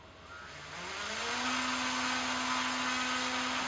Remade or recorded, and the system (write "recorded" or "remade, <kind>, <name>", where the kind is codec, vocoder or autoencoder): recorded